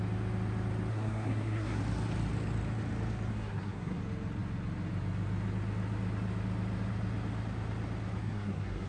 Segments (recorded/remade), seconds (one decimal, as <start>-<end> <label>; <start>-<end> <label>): 0.0-0.9 recorded; 0.9-1.8 remade; 1.8-3.3 recorded; 3.3-4.0 remade; 4.0-8.2 recorded; 8.2-8.9 remade